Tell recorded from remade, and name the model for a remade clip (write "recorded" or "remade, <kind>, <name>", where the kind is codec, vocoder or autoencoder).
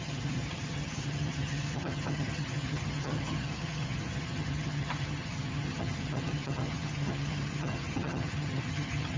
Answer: remade, vocoder, HiFi-GAN